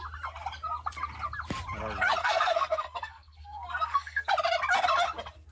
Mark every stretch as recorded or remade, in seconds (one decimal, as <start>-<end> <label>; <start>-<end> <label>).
0.0-2.2 recorded; 2.2-4.3 remade; 4.3-5.5 recorded